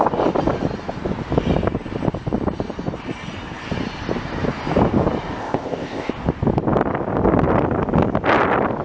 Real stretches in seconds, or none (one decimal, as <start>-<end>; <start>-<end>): 0.0-5.4; 6.1-8.8